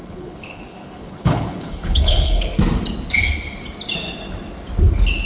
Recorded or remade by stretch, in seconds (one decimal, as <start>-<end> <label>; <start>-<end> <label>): 0.0-2.4 remade; 2.4-5.3 recorded